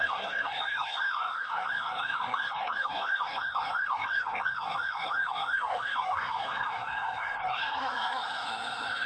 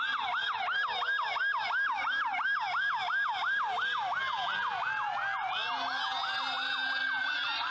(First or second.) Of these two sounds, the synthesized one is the first